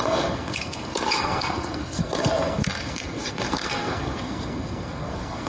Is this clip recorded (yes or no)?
no